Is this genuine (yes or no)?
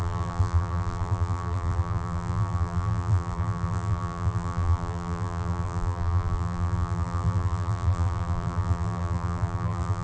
no